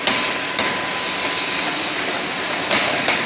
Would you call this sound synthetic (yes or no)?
no